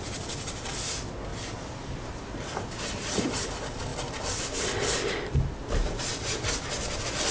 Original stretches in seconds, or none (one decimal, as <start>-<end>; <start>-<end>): 0.0-7.3